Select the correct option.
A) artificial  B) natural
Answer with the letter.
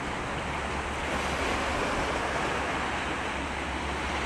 B